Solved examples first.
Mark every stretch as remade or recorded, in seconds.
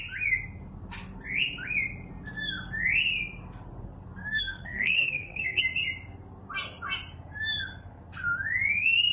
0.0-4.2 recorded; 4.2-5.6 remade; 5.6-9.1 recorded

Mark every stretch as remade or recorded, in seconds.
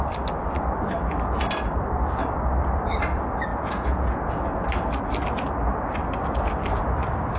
0.0-3.5 recorded; 3.5-4.3 remade; 4.3-7.4 recorded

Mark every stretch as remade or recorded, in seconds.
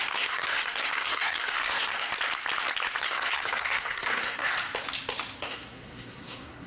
0.0-2.1 remade; 2.1-3.0 recorded; 3.0-4.5 remade; 4.5-5.4 recorded; 5.4-6.7 remade